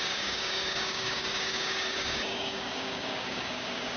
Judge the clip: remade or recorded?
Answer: remade